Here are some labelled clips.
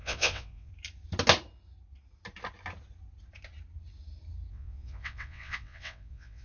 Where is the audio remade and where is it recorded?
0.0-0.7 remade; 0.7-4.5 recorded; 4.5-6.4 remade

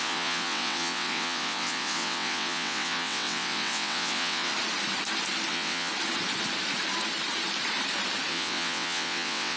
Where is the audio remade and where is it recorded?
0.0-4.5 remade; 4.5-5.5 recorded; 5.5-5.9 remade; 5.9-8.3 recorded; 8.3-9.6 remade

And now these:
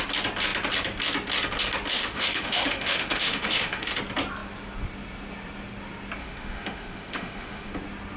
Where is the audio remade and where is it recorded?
0.0-1.9 recorded; 1.9-3.9 remade; 3.9-6.2 recorded; 6.2-7.7 remade; 7.7-8.2 recorded